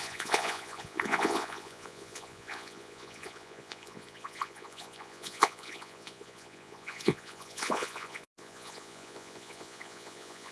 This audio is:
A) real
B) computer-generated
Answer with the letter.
B